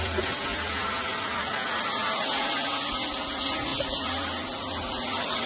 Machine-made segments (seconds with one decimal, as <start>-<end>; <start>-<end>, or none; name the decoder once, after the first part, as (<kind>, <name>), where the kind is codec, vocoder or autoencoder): 0.5-2.9 (vocoder, BigVGAN v2); 3.7-5.5